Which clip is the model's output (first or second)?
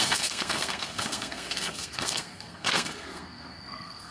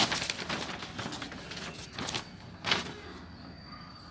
first